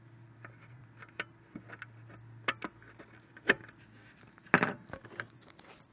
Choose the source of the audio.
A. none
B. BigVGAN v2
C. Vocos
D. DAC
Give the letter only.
A